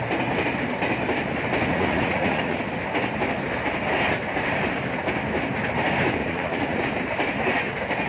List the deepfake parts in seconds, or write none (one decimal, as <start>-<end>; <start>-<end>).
1.7-2.6; 6.2-6.8